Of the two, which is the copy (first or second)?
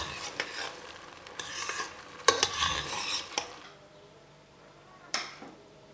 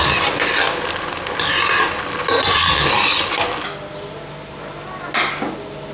first